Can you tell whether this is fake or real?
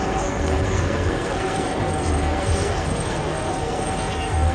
fake